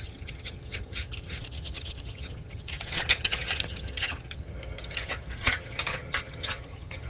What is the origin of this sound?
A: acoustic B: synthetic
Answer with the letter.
B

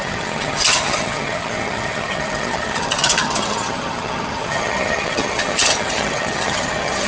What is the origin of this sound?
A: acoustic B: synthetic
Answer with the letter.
B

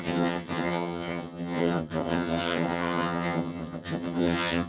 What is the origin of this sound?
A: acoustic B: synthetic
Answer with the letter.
B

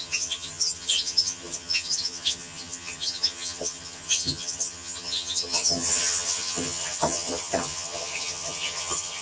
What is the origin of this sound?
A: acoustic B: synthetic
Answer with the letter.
B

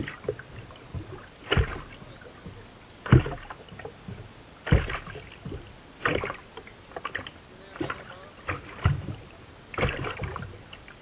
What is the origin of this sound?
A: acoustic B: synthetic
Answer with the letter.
A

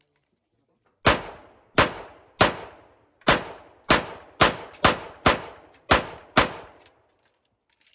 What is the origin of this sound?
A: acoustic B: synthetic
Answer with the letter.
A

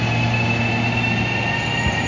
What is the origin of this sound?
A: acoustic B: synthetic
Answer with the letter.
A